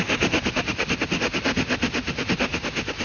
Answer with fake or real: real